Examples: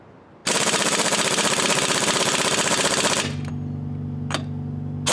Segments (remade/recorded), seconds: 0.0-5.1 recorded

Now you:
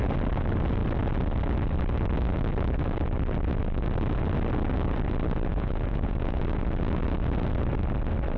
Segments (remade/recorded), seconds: 0.0-5.5 recorded; 5.5-6.4 remade; 6.4-8.4 recorded

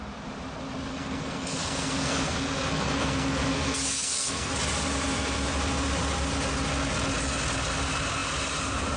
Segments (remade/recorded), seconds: 0.0-0.9 recorded; 0.9-4.5 remade; 4.5-9.0 recorded